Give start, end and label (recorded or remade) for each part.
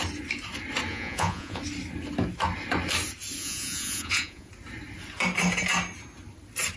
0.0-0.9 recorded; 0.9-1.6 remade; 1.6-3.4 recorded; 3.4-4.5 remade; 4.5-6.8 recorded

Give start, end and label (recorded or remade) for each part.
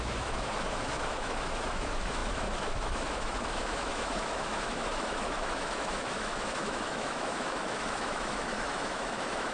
0.0-9.5 remade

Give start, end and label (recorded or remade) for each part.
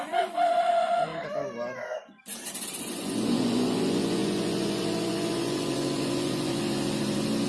0.0-1.1 remade; 1.1-2.8 recorded; 2.8-7.5 remade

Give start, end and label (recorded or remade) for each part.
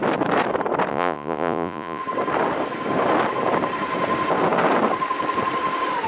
0.0-0.9 recorded; 0.9-2.0 remade; 2.0-6.1 recorded